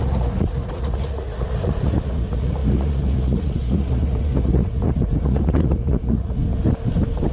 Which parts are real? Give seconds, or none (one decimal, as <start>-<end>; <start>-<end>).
6.4-7.3